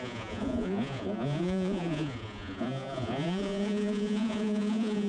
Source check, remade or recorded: remade